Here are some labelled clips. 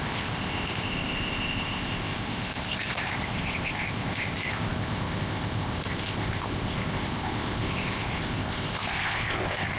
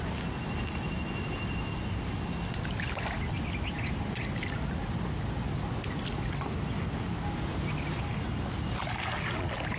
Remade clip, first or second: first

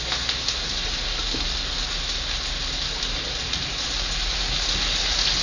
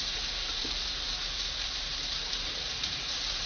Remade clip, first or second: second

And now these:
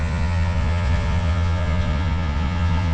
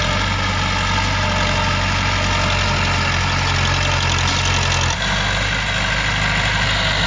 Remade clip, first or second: first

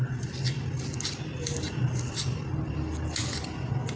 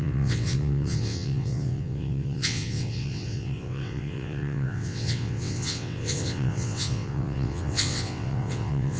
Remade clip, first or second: second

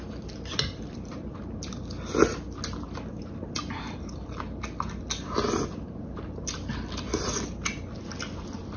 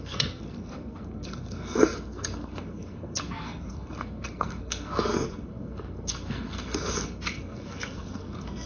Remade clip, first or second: second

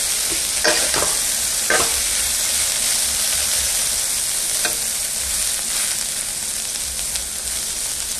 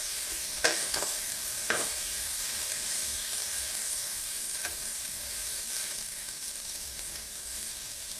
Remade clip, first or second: second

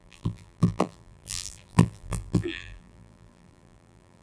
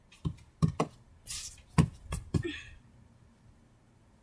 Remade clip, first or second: first